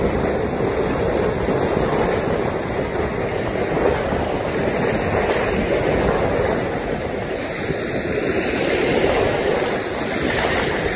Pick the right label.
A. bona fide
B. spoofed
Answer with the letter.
A